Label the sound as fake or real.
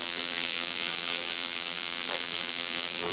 fake